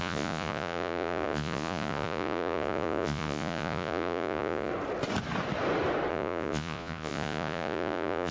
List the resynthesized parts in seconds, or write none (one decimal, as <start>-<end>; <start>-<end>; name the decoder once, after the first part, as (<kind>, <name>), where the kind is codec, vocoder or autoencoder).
0.0-4.7 (vocoder, Vocos); 6.1-8.3